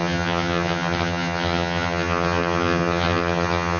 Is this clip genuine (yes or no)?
no